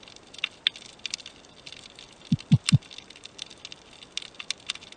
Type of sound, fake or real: real